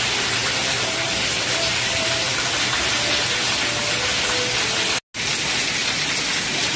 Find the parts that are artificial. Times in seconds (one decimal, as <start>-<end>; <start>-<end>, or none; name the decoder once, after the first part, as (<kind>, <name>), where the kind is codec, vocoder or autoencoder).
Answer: 0.4-2.7 (vocoder, BigVGAN v2)